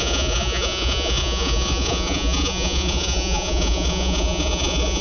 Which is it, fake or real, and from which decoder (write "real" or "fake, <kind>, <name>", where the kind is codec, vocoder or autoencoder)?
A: fake, vocoder, Vocos